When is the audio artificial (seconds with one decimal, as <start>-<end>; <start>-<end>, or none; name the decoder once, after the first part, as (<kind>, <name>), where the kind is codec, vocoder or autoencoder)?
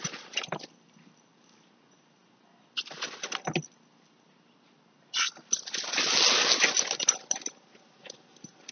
none